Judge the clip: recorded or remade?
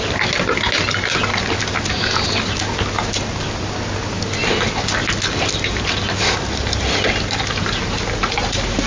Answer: recorded